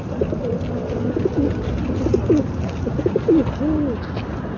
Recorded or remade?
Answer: recorded